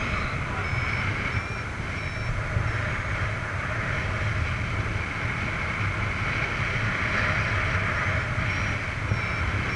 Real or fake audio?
real